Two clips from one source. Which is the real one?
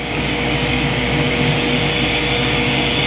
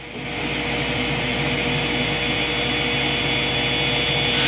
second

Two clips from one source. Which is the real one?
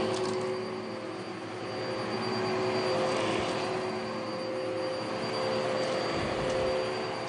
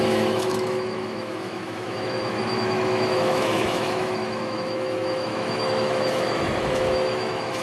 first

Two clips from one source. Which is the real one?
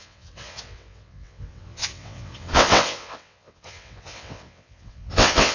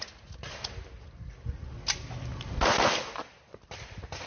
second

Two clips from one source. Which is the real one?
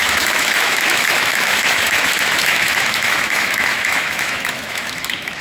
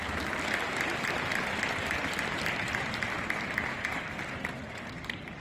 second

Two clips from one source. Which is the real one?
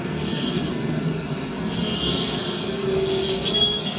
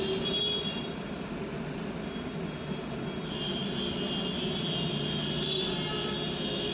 second